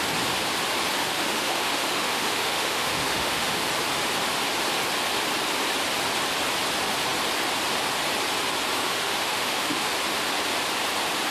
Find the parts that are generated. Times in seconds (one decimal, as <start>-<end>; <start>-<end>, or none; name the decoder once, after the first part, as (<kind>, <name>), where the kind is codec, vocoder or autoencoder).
1.0-3.7 (autoencoder, DAC-VAE); 8.8-9.9

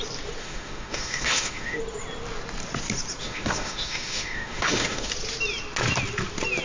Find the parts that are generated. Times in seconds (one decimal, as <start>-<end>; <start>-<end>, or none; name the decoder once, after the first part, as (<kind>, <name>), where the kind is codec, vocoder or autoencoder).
0.4-1.8 (autoencoder, DAC-VAE); 3.2-5.1

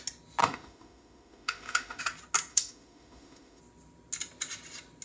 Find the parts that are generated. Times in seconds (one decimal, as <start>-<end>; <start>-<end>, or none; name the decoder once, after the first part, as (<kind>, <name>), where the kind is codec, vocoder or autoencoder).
0.4-2.0 (autoencoder, DAC-VAE); 2.5-3.6

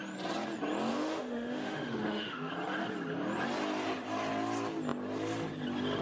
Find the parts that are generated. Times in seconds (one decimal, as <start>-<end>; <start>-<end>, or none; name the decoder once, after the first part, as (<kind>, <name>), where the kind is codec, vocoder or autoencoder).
0.9-2.5 (autoencoder, DAC-VAE)

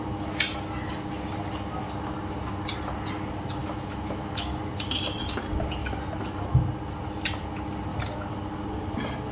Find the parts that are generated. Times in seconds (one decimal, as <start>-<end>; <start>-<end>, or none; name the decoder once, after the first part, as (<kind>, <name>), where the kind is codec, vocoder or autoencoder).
3.6-4.6 (autoencoder, DAC-VAE)